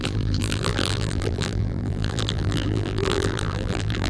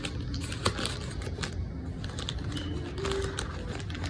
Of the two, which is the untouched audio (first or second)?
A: second